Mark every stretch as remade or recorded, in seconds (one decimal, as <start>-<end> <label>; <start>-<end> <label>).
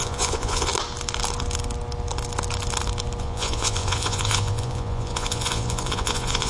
0.0-0.7 remade; 0.7-3.2 recorded; 3.2-6.5 remade